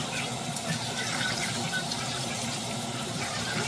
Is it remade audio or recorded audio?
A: remade